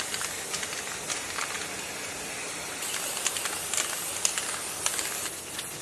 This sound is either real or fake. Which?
real